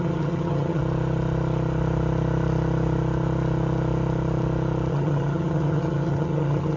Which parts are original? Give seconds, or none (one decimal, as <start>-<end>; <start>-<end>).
0.8-4.9